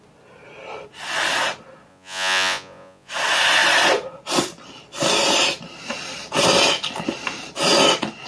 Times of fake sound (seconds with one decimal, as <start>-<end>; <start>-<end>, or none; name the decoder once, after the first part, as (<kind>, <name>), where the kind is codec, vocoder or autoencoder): 1.9-3.1 (vocoder, Vocos)